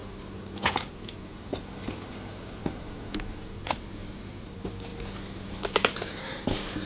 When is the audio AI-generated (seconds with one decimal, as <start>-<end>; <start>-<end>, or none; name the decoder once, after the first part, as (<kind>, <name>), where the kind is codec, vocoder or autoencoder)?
1.1-2.6 (vocoder, BigVGAN v2); 4.3-6.9